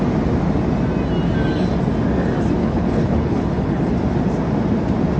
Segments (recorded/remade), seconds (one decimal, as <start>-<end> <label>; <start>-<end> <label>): 0.0-2.6 recorded; 2.6-3.9 remade; 3.9-5.2 recorded